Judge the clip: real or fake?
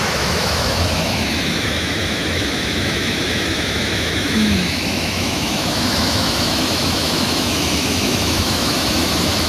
fake